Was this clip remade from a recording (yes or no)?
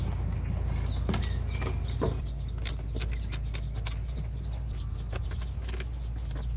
no